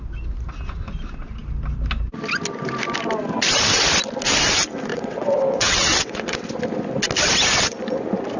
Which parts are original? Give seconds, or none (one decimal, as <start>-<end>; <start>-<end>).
0.0-4.9; 6.4-8.4

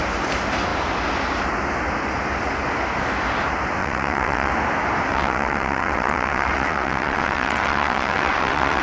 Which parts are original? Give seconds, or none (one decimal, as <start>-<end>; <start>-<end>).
0.0-3.8; 4.5-5.1

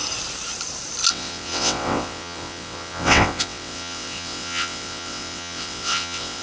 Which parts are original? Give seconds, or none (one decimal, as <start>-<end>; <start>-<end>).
0.0-1.1

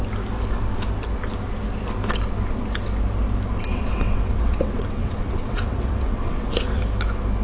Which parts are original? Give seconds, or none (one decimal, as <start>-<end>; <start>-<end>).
0.0-3.7; 6.8-7.4

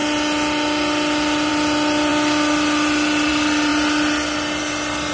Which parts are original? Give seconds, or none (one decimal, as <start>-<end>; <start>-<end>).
0.0-5.1

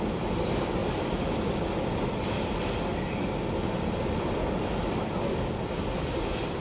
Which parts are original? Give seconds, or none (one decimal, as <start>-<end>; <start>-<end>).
0.0-6.6

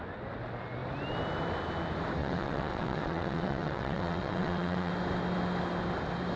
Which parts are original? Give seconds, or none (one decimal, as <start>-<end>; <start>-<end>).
0.0-2.2; 4.9-6.4